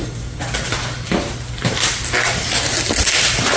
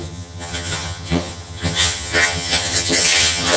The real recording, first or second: first